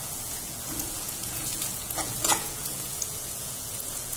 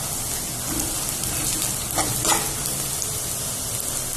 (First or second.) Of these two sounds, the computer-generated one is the first